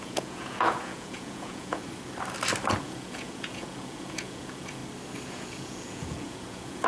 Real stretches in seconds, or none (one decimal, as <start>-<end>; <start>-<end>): 1.8-2.8; 4.8-5.3